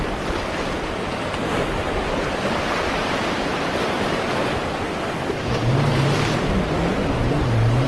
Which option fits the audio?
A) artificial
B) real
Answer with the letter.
B